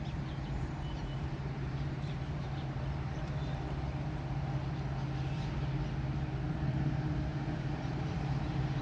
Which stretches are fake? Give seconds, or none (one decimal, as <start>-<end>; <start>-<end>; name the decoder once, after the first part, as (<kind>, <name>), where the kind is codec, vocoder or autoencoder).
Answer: 0.0-4.6 (vocoder, BigVGAN v2); 6.5-8.8